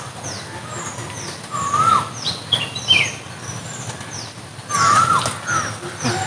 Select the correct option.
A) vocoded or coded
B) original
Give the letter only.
B